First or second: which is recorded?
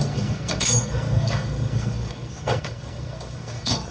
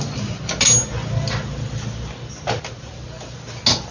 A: second